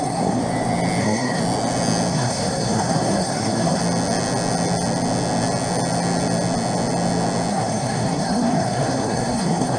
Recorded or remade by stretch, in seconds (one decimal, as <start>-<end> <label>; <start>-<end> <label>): 0.0-0.4 remade; 0.4-1.0 recorded; 1.0-1.4 remade; 1.4-2.1 recorded; 2.1-3.8 remade; 3.8-7.5 recorded; 7.5-9.8 remade